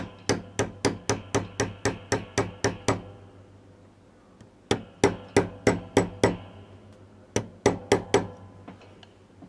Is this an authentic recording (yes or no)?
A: yes